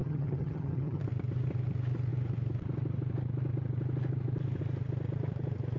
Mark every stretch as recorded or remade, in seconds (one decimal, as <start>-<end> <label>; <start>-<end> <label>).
0.0-1.0 remade; 1.0-5.8 recorded